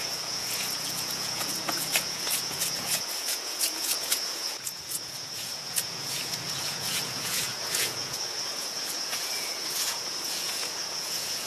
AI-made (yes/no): yes